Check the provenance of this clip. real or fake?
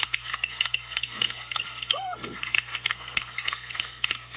fake